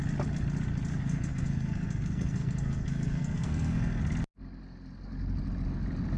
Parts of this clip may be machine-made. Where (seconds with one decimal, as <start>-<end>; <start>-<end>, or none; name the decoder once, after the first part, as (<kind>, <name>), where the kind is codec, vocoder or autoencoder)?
0.9-4.0 (codec, SNAC)